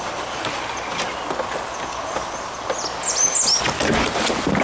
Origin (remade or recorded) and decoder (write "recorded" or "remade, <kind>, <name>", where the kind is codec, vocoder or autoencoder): recorded